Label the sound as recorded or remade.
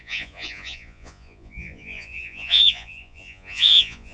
remade